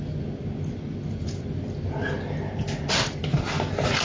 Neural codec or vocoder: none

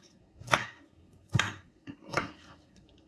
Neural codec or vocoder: codec, SNAC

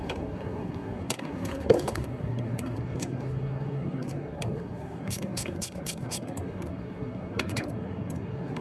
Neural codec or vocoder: codec, SNAC